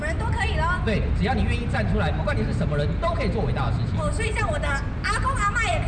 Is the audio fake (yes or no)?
no